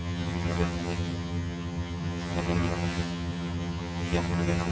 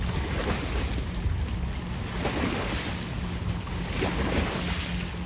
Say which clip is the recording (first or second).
second